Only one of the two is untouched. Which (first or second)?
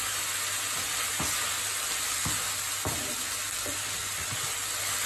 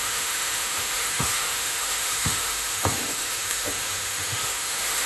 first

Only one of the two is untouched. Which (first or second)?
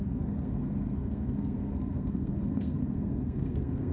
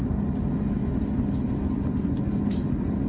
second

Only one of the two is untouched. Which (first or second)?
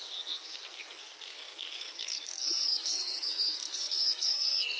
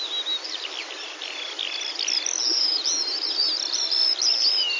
second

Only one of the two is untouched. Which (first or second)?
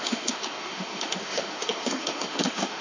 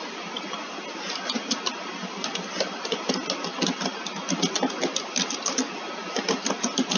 second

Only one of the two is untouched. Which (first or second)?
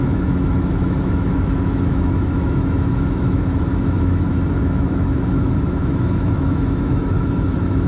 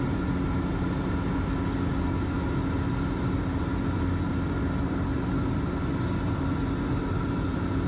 second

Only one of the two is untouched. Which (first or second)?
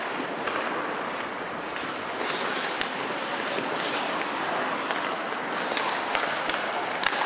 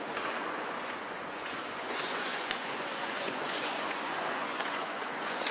first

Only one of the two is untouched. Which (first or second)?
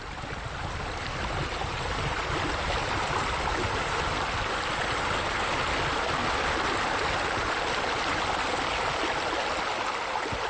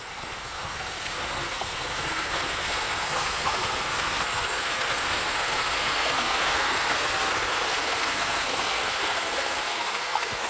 first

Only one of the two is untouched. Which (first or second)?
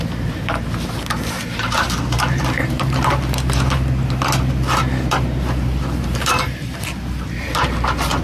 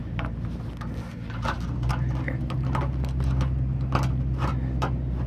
second